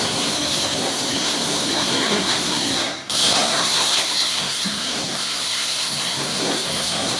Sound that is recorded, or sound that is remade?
remade